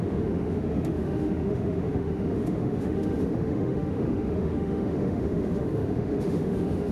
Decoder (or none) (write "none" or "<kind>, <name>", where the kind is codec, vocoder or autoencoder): autoencoder, DAC-VAE